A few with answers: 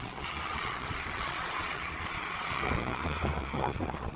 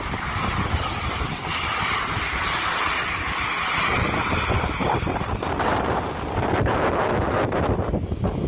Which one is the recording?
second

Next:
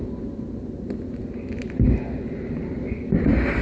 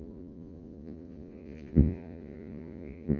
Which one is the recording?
first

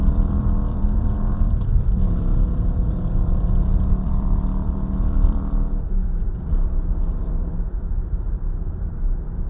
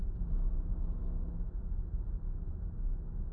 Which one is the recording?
second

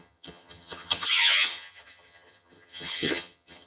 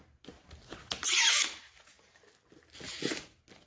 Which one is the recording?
second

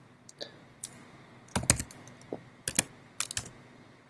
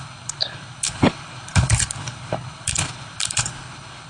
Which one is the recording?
first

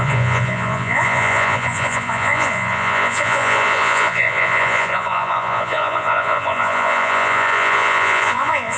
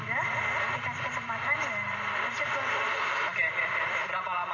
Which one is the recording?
second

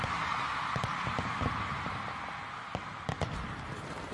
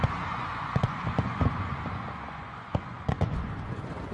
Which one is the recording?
first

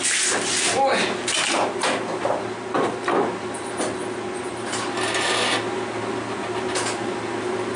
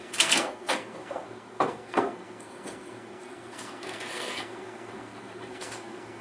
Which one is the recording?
first